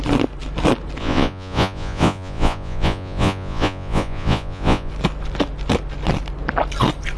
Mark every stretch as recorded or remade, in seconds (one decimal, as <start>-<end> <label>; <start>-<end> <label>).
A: 0.0-1.0 recorded; 1.0-4.9 remade; 4.9-7.2 recorded